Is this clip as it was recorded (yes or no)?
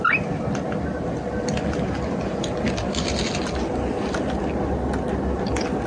yes